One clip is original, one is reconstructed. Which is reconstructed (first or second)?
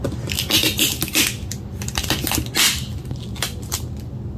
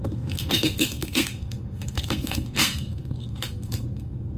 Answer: second